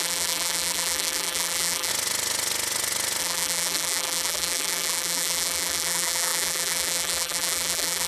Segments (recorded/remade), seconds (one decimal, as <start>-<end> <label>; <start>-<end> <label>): 0.0-1.9 remade; 1.9-3.2 recorded; 3.2-8.1 remade